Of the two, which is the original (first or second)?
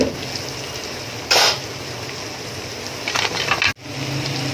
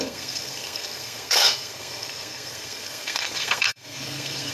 first